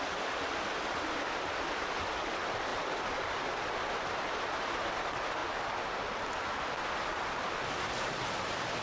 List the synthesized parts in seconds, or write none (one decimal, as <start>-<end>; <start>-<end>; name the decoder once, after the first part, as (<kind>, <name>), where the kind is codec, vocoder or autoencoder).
none